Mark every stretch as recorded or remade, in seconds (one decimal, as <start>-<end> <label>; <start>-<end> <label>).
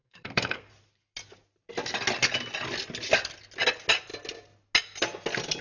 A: 0.0-0.7 remade; 0.7-5.6 recorded